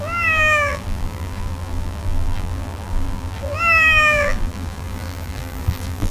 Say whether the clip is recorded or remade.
remade